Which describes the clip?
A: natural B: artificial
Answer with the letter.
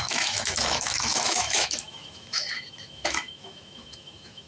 B